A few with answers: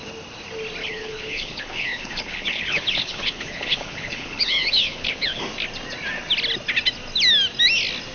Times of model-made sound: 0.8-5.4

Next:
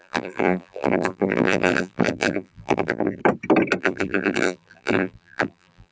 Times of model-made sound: 0.0-3.2; 3.8-5.9

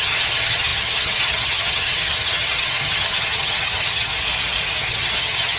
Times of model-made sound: 0.0-4.1; 4.8-5.6